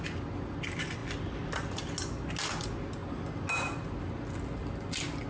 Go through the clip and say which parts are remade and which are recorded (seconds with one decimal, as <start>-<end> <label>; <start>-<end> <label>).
0.0-5.3 recorded